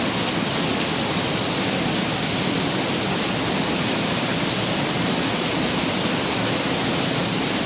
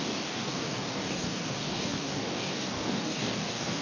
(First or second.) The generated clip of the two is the second